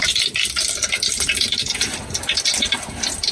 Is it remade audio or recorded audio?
recorded